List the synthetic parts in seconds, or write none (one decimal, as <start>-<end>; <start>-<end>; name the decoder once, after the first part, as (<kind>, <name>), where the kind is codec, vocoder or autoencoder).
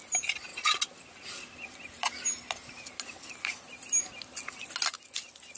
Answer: none